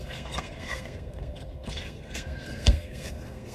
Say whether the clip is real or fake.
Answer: fake